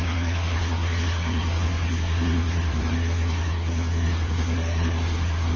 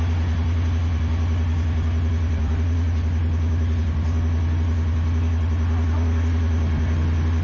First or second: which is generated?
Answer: first